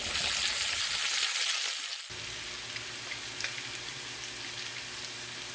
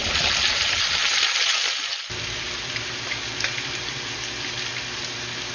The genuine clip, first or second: first